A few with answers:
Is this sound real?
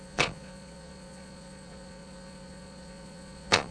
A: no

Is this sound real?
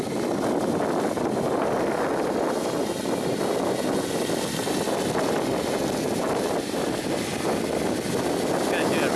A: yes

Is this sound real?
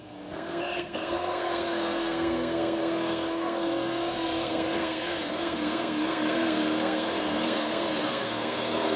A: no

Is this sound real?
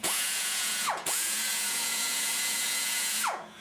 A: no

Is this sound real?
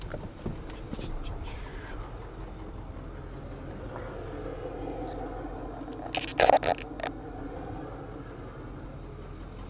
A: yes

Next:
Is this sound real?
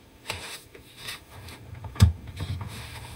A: no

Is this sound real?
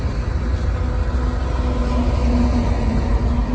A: yes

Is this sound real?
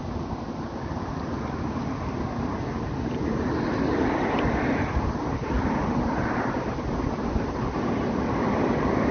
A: yes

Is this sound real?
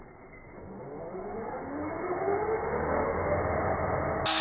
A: yes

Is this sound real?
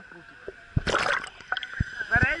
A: yes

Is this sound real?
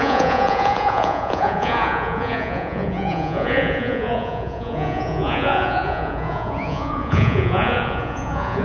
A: no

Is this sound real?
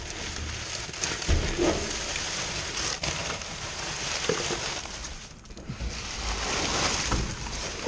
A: yes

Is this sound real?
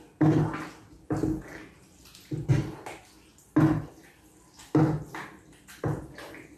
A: yes